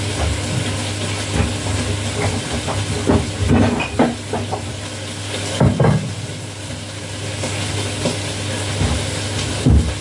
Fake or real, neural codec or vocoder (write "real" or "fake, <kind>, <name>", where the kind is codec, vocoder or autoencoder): real